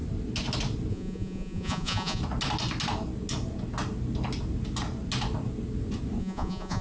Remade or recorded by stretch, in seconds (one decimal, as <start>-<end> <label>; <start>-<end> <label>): 0.0-0.9 recorded; 0.9-2.2 remade; 2.2-6.2 recorded; 6.2-6.8 remade

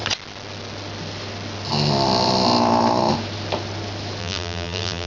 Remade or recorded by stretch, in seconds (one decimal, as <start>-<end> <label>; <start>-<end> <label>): 0.0-4.2 recorded; 4.2-5.1 remade

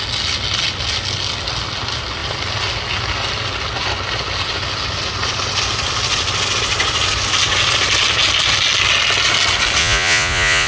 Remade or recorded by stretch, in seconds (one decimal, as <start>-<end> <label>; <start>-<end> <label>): 0.0-9.8 recorded; 9.8-10.7 remade

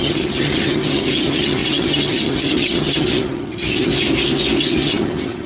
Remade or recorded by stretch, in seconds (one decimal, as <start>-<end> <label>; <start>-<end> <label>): 0.0-3.9 remade; 3.9-4.6 recorded; 4.6-5.5 remade

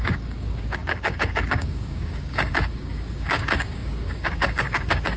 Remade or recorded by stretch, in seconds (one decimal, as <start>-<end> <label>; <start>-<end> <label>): 0.0-5.2 remade

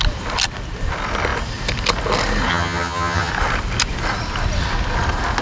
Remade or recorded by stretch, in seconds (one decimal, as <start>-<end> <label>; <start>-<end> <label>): 0.0-2.5 recorded; 2.5-3.3 remade; 3.3-5.4 recorded